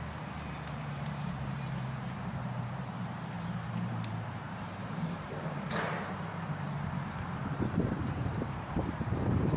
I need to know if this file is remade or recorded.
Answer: remade